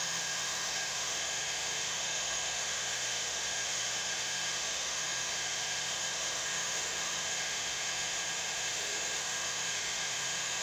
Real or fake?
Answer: fake